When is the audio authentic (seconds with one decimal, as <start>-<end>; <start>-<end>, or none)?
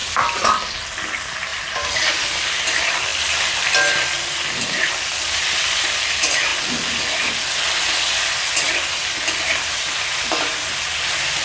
0.7-3.1; 6.1-6.5; 7.0-11.4